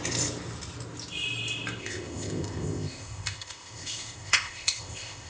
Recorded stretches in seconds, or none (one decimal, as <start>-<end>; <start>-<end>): 0.0-1.8